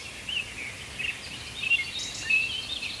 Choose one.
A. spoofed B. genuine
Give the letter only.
B